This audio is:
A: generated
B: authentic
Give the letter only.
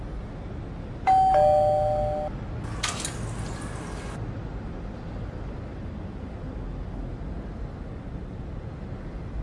B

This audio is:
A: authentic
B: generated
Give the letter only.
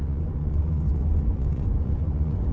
B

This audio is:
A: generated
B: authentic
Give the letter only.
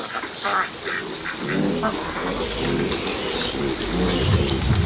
B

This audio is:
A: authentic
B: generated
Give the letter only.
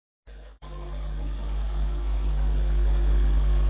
B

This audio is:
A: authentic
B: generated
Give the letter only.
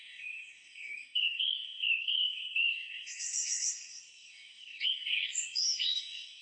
B